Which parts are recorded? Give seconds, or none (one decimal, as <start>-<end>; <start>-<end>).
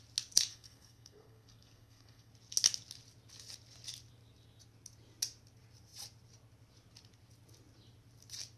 0.0-0.5; 2.3-8.6